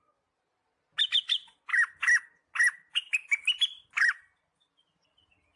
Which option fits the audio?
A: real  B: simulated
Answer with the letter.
A